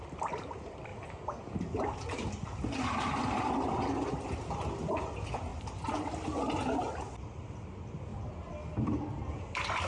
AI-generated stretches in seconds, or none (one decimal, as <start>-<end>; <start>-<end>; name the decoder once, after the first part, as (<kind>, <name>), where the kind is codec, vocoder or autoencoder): 0.0-0.9 (vocoder, BigVGAN v2); 1.6-5.5; 7.5-8.1; 9.3-9.9